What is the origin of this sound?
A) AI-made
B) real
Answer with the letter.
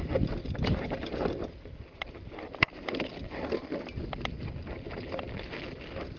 B